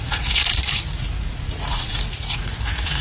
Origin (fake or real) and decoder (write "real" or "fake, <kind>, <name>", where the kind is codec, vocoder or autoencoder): fake, vocoder, Vocos